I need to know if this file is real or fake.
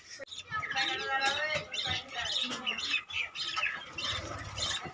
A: real